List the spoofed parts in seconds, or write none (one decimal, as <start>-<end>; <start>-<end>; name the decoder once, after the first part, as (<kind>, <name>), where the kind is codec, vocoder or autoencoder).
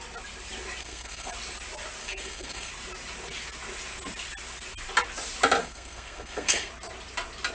0.8-1.3 (codec, SNAC); 2.0-2.7; 5.6-6.7